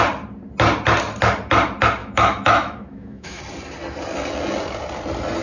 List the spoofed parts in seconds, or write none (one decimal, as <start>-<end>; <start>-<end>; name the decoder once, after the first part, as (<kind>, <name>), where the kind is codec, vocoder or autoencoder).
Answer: 2.0-3.4 (autoencoder, DAC-VAE)